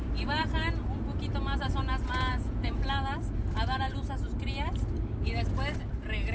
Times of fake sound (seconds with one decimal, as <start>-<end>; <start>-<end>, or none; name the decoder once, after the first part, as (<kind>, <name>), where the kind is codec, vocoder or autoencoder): 2.3-2.8 (vocoder, Vocos)